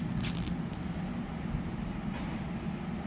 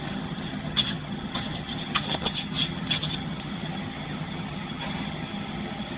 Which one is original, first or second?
first